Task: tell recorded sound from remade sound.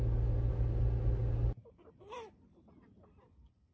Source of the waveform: recorded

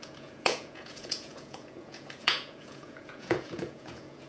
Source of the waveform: remade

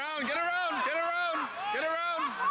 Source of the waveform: recorded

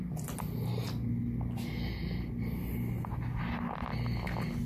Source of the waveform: recorded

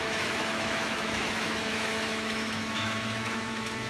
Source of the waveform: remade